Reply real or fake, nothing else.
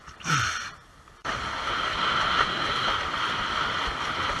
real